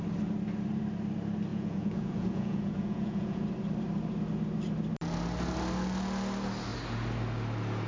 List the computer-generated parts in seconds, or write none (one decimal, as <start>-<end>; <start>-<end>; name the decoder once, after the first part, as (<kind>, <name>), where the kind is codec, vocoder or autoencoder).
1.5-3.4 (vocoder, Vocos)

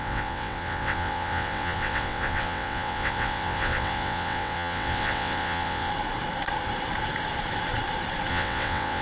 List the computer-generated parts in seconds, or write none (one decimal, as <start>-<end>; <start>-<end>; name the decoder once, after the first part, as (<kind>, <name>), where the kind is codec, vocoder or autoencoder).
0.0-5.9 (vocoder, WaveNeXt); 8.3-9.0

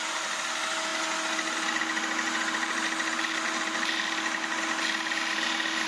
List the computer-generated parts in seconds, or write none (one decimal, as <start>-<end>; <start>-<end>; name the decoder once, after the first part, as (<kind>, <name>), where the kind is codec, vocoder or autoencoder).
none

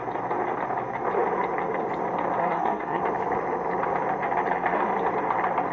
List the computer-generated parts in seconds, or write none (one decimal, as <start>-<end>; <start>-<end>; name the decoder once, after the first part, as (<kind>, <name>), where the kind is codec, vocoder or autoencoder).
2.4-3.0 (codec, SNAC)

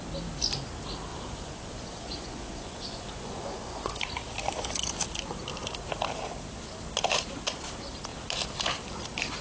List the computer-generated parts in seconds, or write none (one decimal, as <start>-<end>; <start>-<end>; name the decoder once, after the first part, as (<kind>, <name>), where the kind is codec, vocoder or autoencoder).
1.1-4.0 (vocoder, Vocos)

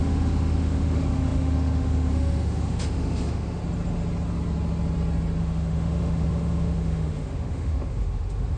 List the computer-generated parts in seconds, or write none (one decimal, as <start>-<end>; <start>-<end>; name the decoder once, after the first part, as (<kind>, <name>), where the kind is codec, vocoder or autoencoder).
0.0-3.6 (autoencoder, DAC-VAE); 5.4-8.6

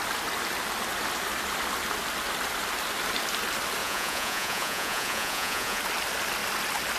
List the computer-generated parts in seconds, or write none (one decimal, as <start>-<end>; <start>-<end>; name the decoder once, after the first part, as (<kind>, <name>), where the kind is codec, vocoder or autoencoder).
3.8-5.8 (vocoder, Vocos)